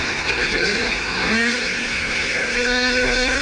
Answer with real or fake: fake